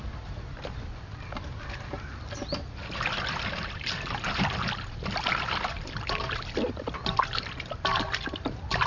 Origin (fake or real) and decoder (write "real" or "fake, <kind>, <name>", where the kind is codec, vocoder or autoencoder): real